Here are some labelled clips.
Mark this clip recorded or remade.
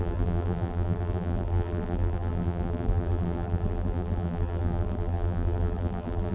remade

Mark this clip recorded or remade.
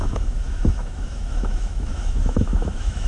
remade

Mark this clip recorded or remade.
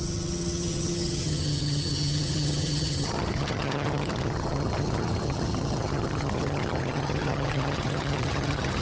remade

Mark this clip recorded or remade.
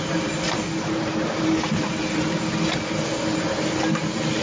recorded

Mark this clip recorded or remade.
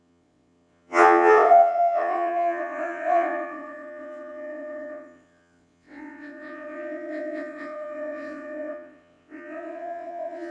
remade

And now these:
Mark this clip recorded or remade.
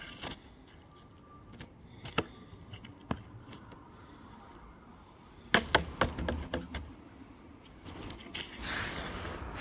recorded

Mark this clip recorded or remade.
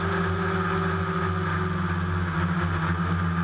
recorded